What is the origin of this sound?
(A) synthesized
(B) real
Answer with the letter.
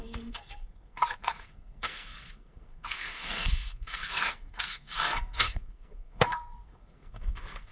A